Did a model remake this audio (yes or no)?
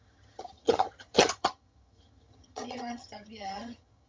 yes